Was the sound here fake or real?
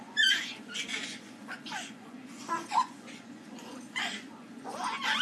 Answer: fake